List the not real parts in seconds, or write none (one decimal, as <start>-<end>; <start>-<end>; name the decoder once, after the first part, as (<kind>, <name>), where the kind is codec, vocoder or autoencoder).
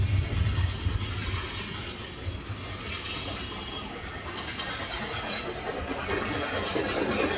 none